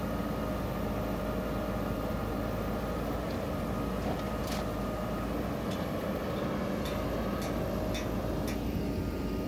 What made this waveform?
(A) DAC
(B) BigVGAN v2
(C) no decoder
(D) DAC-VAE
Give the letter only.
C